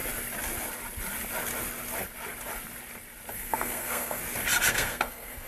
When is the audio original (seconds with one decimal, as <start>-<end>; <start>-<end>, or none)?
0.0-3.3; 4.2-4.7